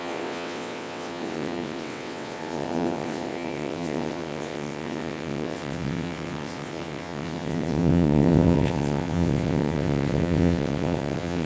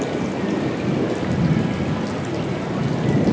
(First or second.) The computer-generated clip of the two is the first